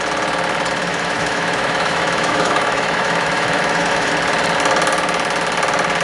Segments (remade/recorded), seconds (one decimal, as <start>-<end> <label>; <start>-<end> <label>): 0.0-0.9 recorded; 0.9-4.1 remade; 4.1-6.0 recorded